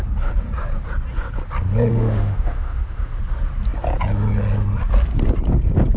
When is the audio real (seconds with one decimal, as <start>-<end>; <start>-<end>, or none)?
0.0-1.9; 3.2-6.0